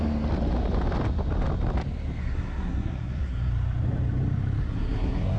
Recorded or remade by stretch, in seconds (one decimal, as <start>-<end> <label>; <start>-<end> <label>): 0.0-2.2 recorded; 2.2-3.5 remade; 3.5-4.6 recorded; 4.6-5.4 remade